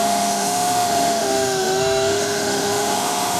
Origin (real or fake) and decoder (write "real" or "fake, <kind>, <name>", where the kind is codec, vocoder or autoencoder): fake, autoencoder, DAC-VAE